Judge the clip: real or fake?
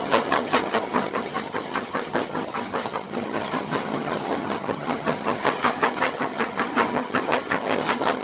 fake